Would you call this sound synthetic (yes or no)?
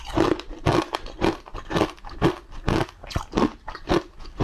no